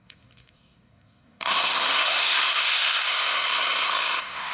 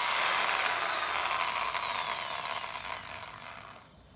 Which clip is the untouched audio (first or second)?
second